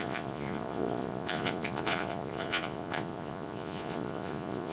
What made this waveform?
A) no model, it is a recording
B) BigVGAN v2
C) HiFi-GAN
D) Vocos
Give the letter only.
D